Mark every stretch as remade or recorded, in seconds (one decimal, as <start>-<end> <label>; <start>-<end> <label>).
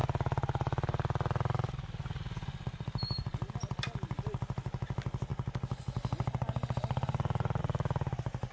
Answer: 0.0-8.5 recorded